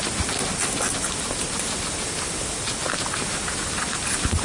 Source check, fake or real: real